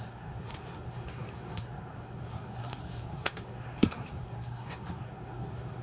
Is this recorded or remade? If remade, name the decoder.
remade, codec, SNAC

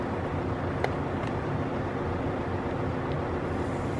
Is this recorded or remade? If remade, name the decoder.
recorded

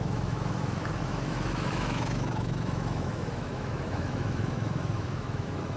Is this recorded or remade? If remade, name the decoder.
remade, autoencoder, DAC-VAE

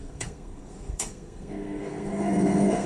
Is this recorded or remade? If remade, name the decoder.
remade, codec, SNAC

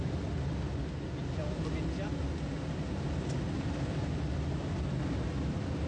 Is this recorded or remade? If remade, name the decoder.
recorded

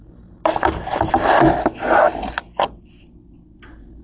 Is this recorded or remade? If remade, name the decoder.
recorded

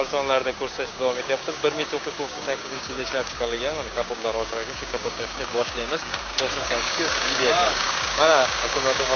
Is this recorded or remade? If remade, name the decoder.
remade, codec, DAC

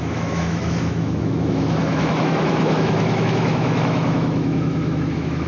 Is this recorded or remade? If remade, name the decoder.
remade, autoencoder, DAC-VAE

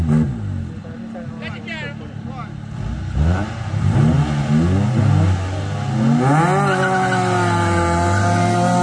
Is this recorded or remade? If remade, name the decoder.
recorded